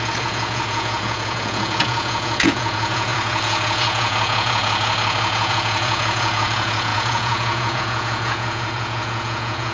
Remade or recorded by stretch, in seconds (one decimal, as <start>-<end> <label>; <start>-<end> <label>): 0.0-9.7 remade